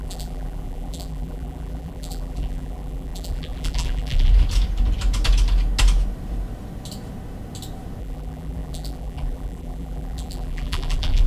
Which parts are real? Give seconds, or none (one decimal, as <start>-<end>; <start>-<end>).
4.3-8.0